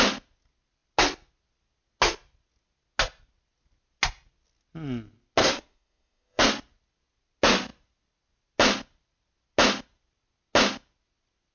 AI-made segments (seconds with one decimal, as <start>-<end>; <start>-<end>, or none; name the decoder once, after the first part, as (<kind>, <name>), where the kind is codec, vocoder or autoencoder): 5.4-6.4 (codec, SNAC)